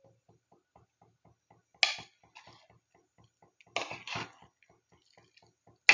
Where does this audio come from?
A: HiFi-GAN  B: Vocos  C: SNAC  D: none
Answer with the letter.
D